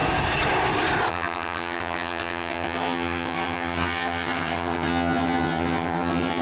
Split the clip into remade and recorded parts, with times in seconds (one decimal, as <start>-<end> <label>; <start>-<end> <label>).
0.0-1.1 recorded; 1.1-6.4 remade

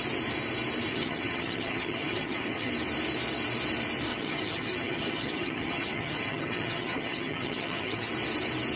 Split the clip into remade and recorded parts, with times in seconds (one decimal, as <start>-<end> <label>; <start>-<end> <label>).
0.0-0.9 recorded; 0.9-2.7 remade; 2.7-4.1 recorded; 4.1-8.1 remade; 8.1-8.8 recorded

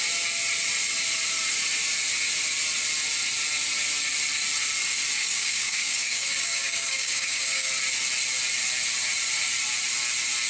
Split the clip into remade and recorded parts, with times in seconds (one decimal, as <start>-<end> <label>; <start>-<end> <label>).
0.0-5.2 recorded; 5.2-7.7 remade; 7.7-10.5 recorded

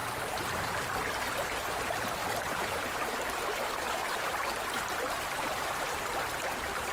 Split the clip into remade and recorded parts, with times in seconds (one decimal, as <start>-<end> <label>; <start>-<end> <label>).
0.0-0.6 remade; 0.6-2.2 recorded; 2.2-2.7 remade; 2.7-4.0 recorded; 4.0-6.4 remade; 6.4-6.9 recorded

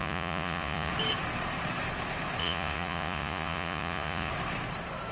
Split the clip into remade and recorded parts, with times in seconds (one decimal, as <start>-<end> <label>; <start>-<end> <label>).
0.0-0.9 remade; 0.9-2.4 recorded; 2.4-4.3 remade; 4.3-5.1 recorded

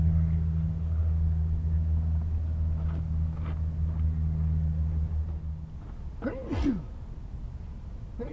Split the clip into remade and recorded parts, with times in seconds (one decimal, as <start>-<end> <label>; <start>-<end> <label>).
0.0-8.3 recorded

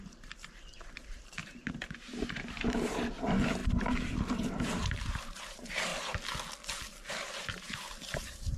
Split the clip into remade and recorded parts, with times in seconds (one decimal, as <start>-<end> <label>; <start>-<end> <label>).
0.0-5.9 remade; 5.9-7.4 recorded; 7.4-8.6 remade